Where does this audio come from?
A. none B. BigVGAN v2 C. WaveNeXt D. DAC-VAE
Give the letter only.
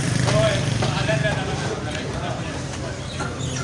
B